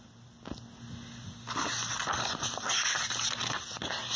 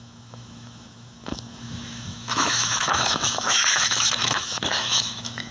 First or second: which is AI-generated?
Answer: second